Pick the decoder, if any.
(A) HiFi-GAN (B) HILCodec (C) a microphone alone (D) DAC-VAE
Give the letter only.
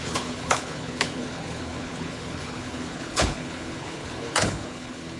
B